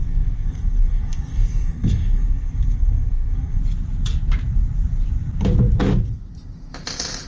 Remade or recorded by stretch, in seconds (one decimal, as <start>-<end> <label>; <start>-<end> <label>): 0.0-3.6 remade; 3.6-7.3 recorded